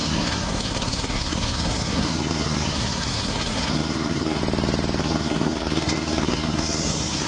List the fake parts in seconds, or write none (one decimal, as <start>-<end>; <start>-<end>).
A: 0.0-4.4; 5.0-7.3